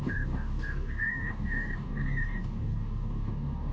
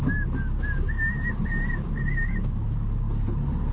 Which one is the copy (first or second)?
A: first